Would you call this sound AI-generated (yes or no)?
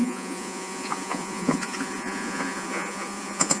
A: yes